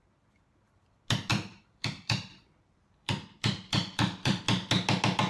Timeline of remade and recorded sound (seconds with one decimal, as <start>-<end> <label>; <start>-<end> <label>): 0.0-1.3 recorded; 1.3-4.4 remade; 4.4-5.3 recorded